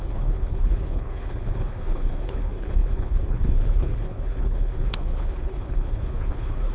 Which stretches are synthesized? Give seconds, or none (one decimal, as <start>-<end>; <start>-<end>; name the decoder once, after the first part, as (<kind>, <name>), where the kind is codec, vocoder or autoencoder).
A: 0.0-6.7 (codec, HILCodec)